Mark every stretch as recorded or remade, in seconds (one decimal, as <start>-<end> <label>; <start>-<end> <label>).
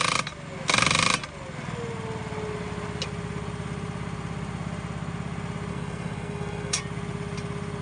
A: 0.0-5.7 recorded; 5.7-6.8 remade; 6.8-7.8 recorded